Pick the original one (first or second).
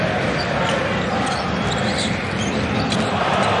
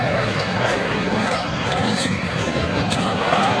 first